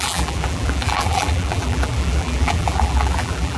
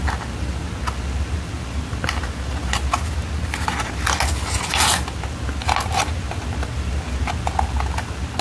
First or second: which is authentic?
second